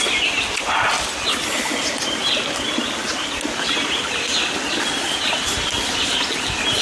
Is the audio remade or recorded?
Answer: recorded